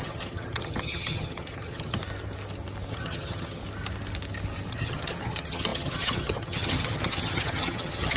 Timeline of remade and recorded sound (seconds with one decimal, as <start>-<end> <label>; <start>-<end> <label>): 0.0-2.0 remade; 2.0-2.9 recorded; 2.9-3.6 remade; 3.6-4.7 recorded; 4.7-8.2 remade